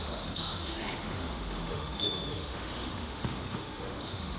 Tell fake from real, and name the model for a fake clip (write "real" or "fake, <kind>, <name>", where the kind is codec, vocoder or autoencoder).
fake, autoencoder, DAC-VAE